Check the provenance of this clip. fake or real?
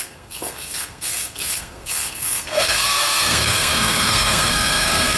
fake